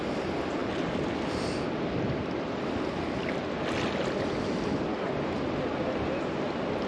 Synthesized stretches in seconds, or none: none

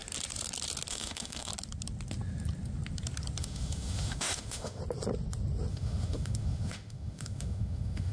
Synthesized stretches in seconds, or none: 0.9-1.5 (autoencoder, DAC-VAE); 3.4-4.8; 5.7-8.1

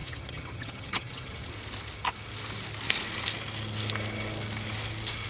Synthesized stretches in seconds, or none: 0.0-1.5 (vocoder, HiFi-GAN)

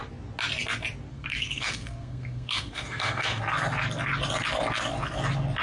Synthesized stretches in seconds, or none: 1.1-3.4 (codec, SNAC)

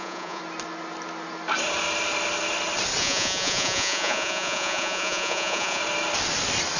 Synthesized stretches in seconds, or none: 0.0-0.4 (vocoder, Vocos); 3.0-5.8

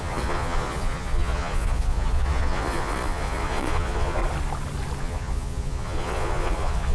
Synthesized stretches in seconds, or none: 0.0-4.2 (vocoder, Vocos); 5.0-6.9

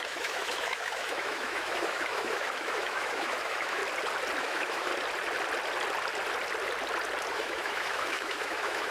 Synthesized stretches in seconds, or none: 0.0-3.8 (autoencoder, DAC-VAE); 4.4-4.9; 7.3-8.9